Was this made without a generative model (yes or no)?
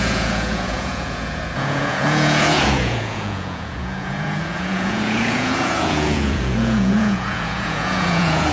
no